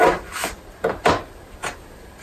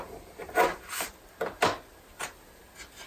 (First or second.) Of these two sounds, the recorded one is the second